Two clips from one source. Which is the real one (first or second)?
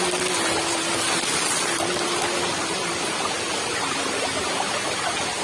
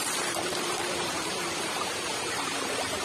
first